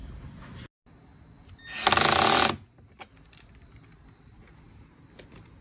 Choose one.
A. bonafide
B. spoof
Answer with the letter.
A